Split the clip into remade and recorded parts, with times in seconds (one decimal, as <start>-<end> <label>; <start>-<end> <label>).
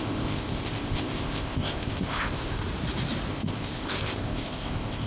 0.0-2.6 remade; 2.6-3.3 recorded; 3.3-5.1 remade